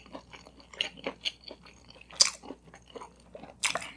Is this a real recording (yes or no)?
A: yes